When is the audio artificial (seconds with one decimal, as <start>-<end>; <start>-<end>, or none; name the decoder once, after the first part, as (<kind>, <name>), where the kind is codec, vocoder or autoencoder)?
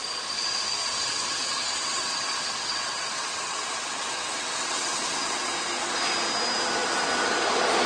0.8-5.5 (vocoder, WaveNeXt)